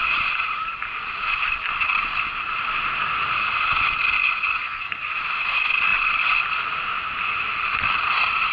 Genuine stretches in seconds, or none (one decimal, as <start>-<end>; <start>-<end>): 0.0-4.6; 5.1-8.5

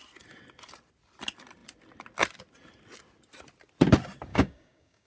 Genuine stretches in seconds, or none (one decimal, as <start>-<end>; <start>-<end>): 0.0-4.3